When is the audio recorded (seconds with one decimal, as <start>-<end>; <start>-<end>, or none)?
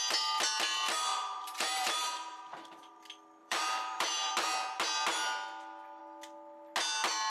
0.0-1.1; 3.0-3.4; 4.3-7.3